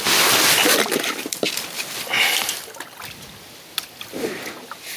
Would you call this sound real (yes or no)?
yes